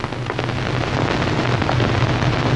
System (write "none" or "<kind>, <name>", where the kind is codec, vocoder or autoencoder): none